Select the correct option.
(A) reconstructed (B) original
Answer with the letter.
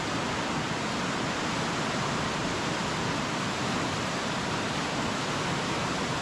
B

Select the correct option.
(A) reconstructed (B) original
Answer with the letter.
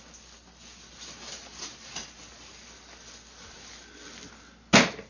B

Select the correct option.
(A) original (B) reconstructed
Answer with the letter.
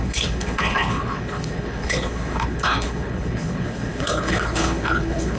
B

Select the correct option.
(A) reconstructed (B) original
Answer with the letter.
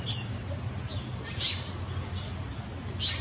B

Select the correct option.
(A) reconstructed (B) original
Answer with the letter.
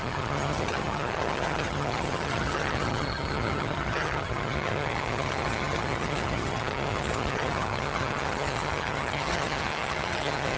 A